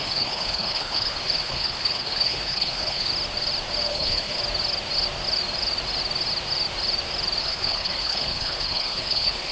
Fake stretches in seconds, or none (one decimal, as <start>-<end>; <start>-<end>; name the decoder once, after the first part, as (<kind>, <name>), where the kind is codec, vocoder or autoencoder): 0.0-3.1 (codec, HILCodec); 3.9-4.4; 7.4-9.5

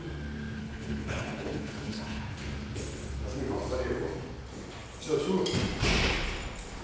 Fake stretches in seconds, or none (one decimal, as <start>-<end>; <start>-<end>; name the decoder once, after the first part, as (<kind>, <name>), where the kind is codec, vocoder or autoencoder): 0.6-2.2 (codec, HILCodec)

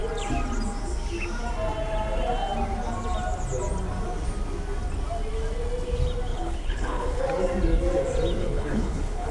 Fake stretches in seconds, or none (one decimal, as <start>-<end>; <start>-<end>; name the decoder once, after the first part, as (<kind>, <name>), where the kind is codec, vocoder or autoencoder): 6.3-7.2 (codec, HILCodec); 8.4-9.3

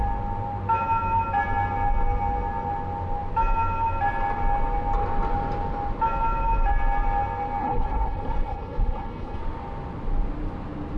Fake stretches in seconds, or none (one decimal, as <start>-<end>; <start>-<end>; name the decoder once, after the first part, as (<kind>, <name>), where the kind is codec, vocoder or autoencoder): 7.6-9.4 (codec, HILCodec)

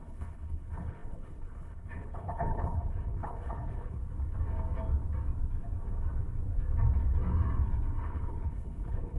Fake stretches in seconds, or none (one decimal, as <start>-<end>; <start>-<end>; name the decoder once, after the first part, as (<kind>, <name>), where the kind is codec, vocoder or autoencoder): 0.0-4.0 (codec, HILCodec); 8.0-9.2

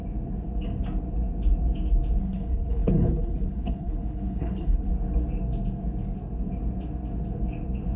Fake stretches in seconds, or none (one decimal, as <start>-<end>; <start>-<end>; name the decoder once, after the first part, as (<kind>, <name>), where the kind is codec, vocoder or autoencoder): 2.2-4.9 (codec, HILCodec)